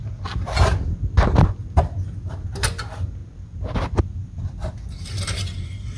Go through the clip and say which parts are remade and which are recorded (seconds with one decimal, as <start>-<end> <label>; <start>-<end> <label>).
0.0-6.0 recorded

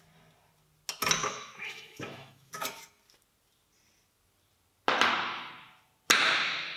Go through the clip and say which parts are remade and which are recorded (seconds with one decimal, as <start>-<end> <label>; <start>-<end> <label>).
0.0-1.2 recorded; 1.2-2.5 remade; 2.5-6.8 recorded

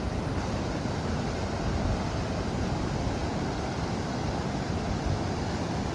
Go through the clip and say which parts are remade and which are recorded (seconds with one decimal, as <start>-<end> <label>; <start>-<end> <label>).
0.0-5.9 recorded

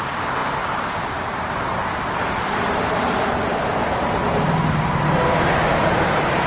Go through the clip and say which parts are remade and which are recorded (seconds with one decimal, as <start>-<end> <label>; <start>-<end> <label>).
0.0-6.5 remade

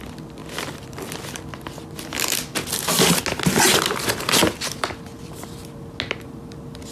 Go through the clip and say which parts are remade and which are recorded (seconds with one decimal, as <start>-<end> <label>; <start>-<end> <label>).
0.0-0.4 recorded; 0.4-2.0 remade; 2.0-4.4 recorded; 4.4-5.6 remade; 5.6-6.9 recorded

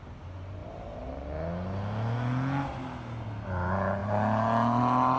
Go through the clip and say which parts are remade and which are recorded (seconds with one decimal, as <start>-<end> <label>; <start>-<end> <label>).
0.0-0.6 recorded; 0.6-1.1 remade; 1.1-5.2 recorded

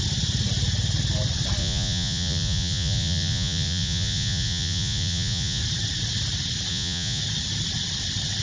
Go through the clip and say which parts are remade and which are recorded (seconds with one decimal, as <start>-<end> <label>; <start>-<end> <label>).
0.0-1.6 recorded; 1.6-5.6 remade; 5.6-6.7 recorded; 6.7-7.2 remade; 7.2-8.4 recorded

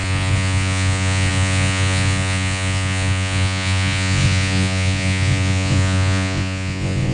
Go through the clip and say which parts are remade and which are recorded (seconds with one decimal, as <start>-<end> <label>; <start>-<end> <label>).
0.0-7.1 remade